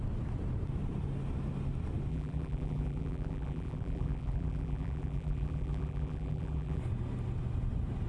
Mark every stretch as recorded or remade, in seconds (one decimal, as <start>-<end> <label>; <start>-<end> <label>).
0.0-2.1 recorded; 2.1-6.8 remade; 6.8-8.1 recorded

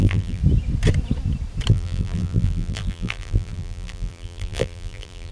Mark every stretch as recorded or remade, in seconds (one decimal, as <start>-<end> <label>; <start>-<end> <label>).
0.0-0.4 remade; 0.4-1.7 recorded; 1.7-5.3 remade